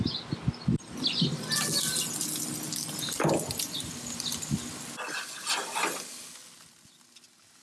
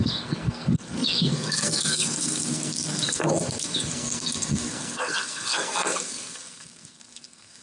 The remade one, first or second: second